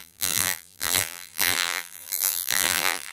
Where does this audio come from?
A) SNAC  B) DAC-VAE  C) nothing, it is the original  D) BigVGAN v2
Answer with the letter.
D